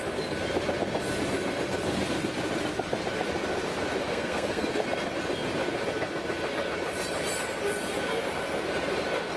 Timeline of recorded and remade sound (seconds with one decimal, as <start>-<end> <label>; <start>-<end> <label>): 0.0-4.1 recorded; 4.1-4.7 remade; 4.7-9.4 recorded

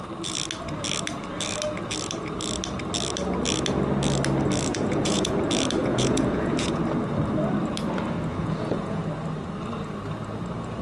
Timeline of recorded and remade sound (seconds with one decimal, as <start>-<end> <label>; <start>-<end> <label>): 0.0-4.7 recorded; 4.7-5.3 remade; 5.3-5.8 recorded; 5.8-6.8 remade; 6.8-8.3 recorded; 8.3-9.0 remade; 9.0-10.8 recorded

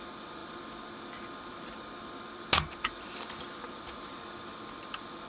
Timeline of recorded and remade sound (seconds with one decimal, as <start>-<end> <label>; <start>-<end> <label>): 0.0-5.3 recorded

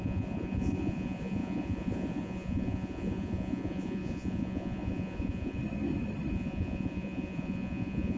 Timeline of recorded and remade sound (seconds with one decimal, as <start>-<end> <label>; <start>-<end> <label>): 0.0-5.6 remade; 5.6-6.3 recorded; 6.3-8.2 remade

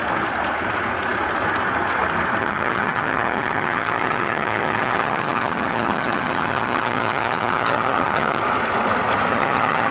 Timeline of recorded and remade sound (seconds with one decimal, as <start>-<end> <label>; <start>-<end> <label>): 0.0-2.4 recorded; 2.4-8.4 remade; 8.4-9.3 recorded; 9.3-9.9 remade

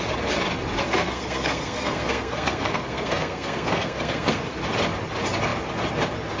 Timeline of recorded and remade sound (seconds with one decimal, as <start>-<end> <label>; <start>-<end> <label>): 0.0-0.8 recorded; 0.8-4.6 remade; 4.6-6.4 recorded

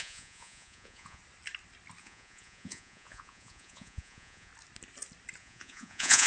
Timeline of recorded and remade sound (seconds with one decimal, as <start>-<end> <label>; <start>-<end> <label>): 0.0-1.2 remade; 1.2-2.0 recorded; 2.0-4.5 remade; 4.5-5.4 recorded; 5.4-6.3 remade

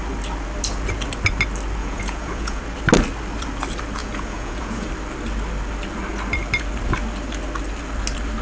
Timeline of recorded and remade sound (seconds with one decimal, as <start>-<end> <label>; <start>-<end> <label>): 0.0-1.8 recorded; 1.8-2.6 remade; 2.6-4.0 recorded; 4.0-4.9 remade; 4.9-8.4 recorded